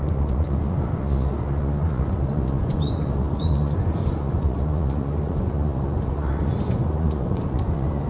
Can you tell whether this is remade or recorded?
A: remade